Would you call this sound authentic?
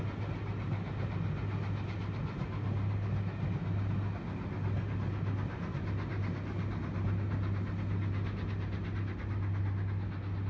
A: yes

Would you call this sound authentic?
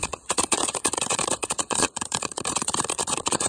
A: no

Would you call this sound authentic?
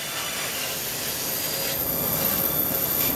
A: yes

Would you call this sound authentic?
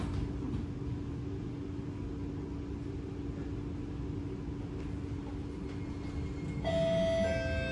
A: yes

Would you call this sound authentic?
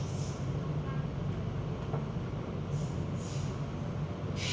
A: yes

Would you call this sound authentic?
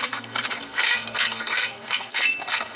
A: no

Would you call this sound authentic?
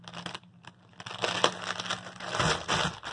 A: yes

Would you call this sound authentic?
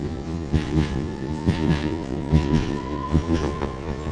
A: no